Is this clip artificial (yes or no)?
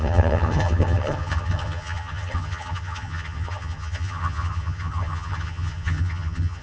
yes